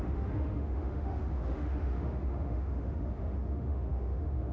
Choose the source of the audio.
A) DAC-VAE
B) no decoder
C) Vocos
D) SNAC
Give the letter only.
A